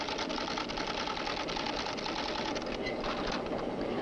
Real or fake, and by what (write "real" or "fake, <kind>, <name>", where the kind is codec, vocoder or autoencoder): real